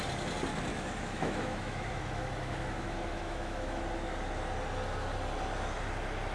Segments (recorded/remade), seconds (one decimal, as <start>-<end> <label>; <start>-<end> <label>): 0.0-0.7 recorded; 0.7-3.8 remade; 3.8-6.3 recorded